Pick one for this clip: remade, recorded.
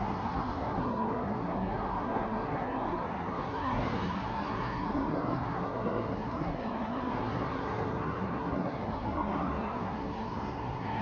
remade